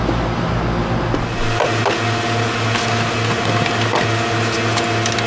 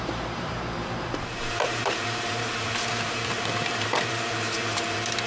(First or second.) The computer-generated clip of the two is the second